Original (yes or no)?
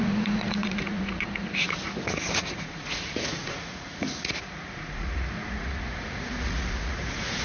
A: no